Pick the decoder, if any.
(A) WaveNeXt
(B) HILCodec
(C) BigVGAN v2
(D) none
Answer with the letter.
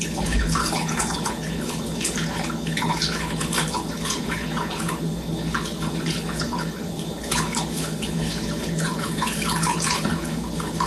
B